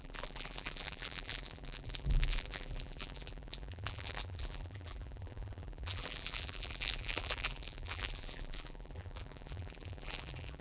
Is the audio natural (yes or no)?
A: no